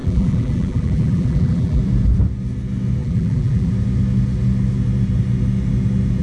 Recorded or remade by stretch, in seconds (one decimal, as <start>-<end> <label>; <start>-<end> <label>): 0.0-1.8 remade; 1.8-3.0 recorded; 3.0-3.7 remade; 3.7-6.2 recorded